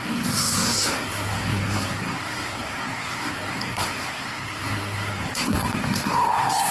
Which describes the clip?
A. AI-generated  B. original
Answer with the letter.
A